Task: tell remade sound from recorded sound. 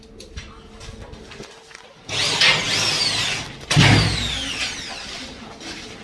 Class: recorded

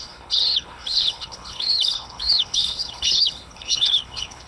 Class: remade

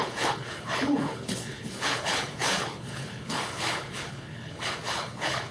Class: remade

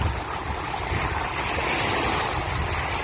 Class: recorded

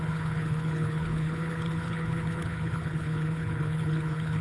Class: remade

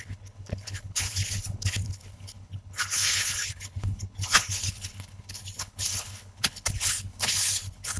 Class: remade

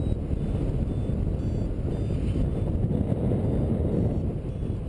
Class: recorded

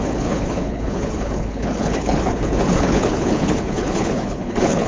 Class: remade